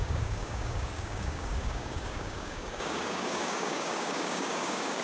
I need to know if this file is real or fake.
fake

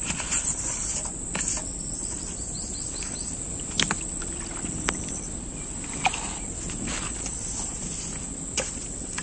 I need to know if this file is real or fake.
fake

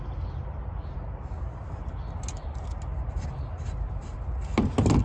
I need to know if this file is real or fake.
real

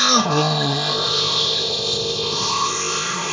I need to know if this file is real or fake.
fake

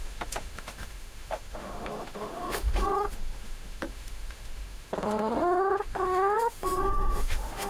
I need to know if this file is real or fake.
fake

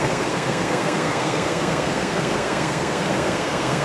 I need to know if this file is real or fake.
fake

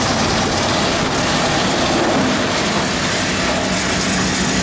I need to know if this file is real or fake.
real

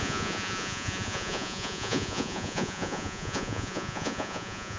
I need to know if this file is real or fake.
fake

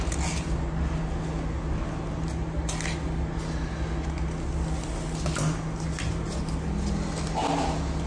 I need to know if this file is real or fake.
real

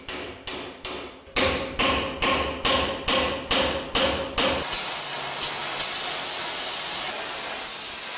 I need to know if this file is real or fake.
real